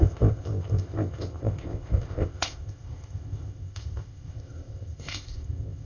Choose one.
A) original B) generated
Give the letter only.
B